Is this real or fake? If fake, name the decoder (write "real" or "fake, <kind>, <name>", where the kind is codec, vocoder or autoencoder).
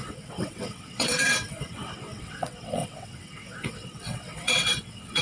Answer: fake, vocoder, WaveNeXt